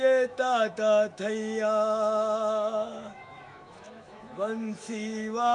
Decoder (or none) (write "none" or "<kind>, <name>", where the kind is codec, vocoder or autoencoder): autoencoder, DAC-VAE